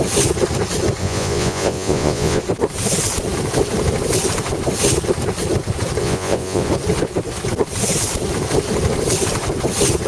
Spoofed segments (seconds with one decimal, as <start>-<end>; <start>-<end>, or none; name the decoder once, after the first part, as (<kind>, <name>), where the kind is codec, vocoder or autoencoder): 1.0-2.4 (vocoder, Vocos); 6.0-6.7